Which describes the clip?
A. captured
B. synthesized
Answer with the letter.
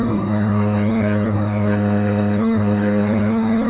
B